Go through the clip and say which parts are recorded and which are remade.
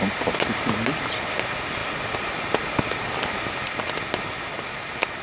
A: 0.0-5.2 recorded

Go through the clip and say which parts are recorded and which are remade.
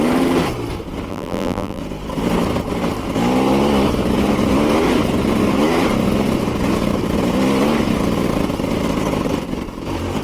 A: 0.0-1.1 recorded; 1.1-1.8 remade; 1.8-10.2 recorded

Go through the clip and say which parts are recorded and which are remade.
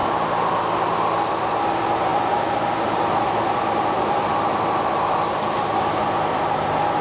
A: 0.0-7.0 recorded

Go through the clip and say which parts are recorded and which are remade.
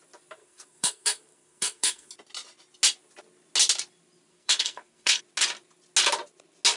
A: 0.0-0.4 recorded; 0.4-2.1 remade; 2.1-4.3 recorded; 4.3-5.2 remade; 5.2-6.8 recorded